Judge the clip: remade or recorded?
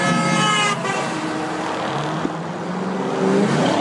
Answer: recorded